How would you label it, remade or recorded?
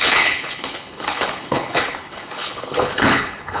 remade